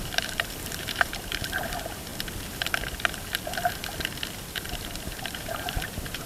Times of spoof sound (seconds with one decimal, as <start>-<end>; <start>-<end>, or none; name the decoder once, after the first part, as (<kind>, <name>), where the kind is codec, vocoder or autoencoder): 0.0-2.1 (vocoder, BigVGAN v2); 5.2-6.3